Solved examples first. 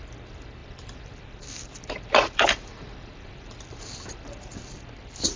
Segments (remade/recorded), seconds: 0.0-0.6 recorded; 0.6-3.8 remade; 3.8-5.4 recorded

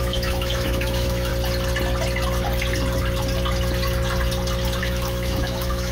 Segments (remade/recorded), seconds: 0.0-1.3 remade; 1.3-4.8 recorded; 4.8-5.9 remade

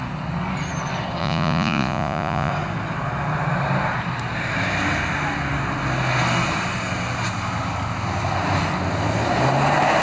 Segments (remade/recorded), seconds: 0.0-1.2 recorded; 1.2-2.5 remade; 2.5-10.0 recorded

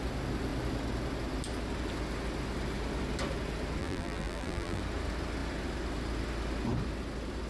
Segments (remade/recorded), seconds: 0.0-3.8 recorded; 3.8-4.8 remade; 4.8-7.5 recorded

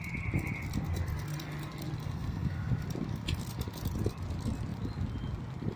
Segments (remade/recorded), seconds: 0.0-2.0 recorded; 2.0-2.7 remade; 2.7-5.8 recorded

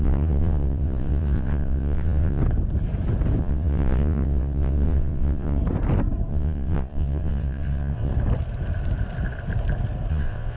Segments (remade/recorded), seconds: 0.0-2.4 remade; 2.4-3.4 recorded; 3.4-5.6 remade; 5.6-6.3 recorded; 6.3-8.1 remade; 8.1-10.1 recorded; 10.1-10.6 remade

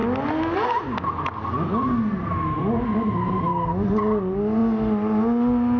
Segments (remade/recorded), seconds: 0.0-5.8 recorded

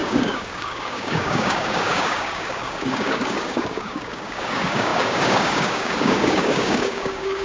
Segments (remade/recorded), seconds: 0.0-7.4 remade